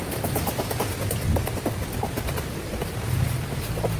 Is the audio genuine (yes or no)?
no